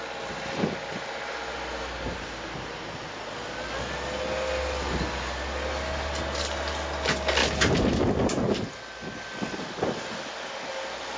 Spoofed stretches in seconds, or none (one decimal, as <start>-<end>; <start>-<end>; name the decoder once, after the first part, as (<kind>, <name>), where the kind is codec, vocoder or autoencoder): none